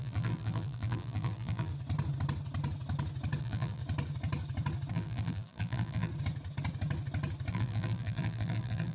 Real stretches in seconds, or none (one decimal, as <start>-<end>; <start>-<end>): 1.7-3.4; 3.8-4.9; 6.1-7.5